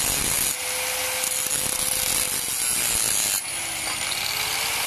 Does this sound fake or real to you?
real